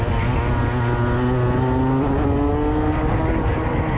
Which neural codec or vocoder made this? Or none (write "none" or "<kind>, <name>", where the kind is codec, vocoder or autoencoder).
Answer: none